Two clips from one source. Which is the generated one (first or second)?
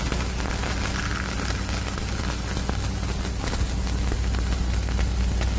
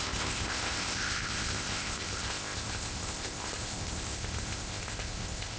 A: second